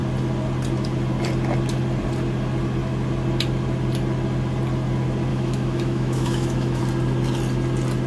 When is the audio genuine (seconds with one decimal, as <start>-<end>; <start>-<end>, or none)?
0.0-5.3; 6.8-8.1